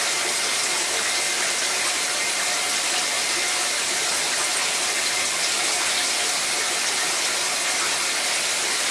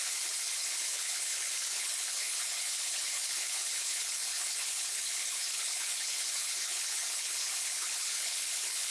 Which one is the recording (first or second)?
first